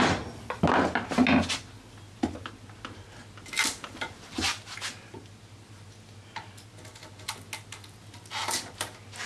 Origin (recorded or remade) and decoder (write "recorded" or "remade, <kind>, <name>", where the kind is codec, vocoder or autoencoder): recorded